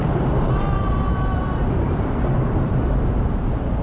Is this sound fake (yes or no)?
no